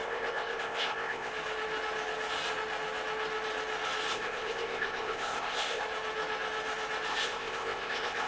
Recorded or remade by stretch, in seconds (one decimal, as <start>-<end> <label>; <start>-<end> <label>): 0.0-1.3 remade; 1.3-4.1 recorded; 4.1-5.8 remade; 5.8-7.1 recorded; 7.1-8.3 remade